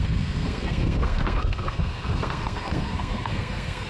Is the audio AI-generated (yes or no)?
yes